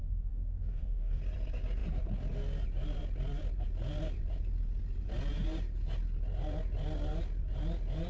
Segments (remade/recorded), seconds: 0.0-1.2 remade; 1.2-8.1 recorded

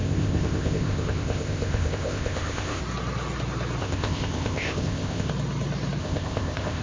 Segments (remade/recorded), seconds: 0.0-2.8 remade; 2.8-3.8 recorded; 3.8-5.3 remade; 5.3-6.0 recorded; 6.0-6.8 remade

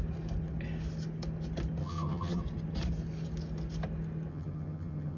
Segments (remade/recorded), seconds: 0.0-1.8 recorded; 1.8-2.4 remade; 2.4-4.3 recorded; 4.3-5.2 remade